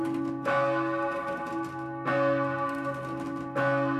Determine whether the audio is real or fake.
real